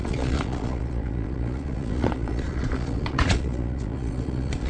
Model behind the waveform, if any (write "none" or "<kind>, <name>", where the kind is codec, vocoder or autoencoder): vocoder, Vocos